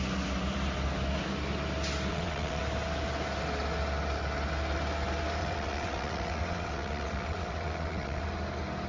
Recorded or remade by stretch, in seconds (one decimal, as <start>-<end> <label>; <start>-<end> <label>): 0.0-2.1 recorded; 2.1-2.6 remade; 2.6-5.4 recorded; 5.4-8.2 remade; 8.2-8.9 recorded